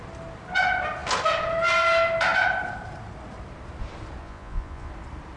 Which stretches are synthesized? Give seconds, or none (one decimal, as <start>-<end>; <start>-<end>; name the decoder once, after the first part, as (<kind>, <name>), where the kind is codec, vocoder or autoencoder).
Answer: 4.2-4.9 (vocoder, Vocos)